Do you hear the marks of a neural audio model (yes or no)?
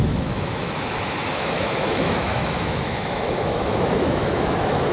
yes